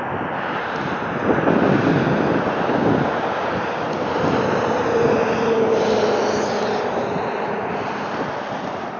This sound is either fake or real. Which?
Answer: real